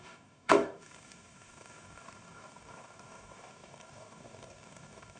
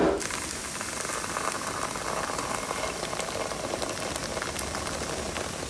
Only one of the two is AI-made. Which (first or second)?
first